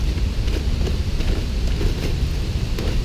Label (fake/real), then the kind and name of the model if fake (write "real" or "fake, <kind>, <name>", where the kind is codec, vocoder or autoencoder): fake, vocoder, BigVGAN v2